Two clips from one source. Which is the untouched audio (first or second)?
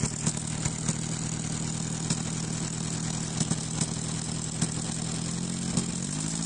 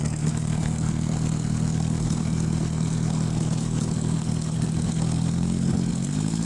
first